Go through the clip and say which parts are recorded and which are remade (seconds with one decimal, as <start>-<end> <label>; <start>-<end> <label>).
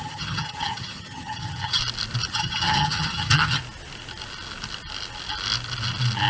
0.0-1.8 remade; 1.8-2.3 recorded; 2.3-3.6 remade; 3.6-6.3 recorded